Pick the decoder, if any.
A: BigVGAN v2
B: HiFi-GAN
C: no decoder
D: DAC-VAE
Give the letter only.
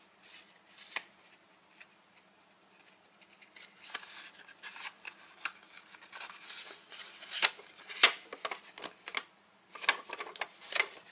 C